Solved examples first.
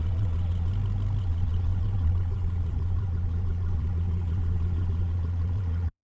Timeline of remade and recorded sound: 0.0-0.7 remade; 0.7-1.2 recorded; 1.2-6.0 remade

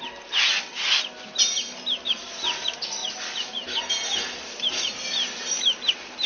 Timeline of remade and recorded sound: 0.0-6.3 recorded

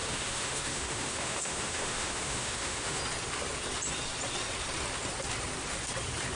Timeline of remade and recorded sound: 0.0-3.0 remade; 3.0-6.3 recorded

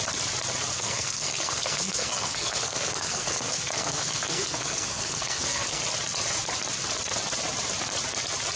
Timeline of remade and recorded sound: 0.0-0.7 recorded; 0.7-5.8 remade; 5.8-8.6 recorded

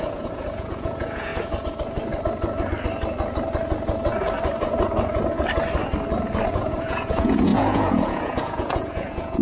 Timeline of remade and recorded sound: 0.0-1.3 remade; 1.3-6.5 recorded; 6.5-9.4 remade